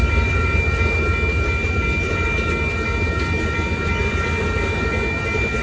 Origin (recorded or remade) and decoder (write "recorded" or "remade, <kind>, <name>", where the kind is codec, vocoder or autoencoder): recorded